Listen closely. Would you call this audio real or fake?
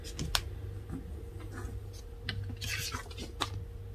real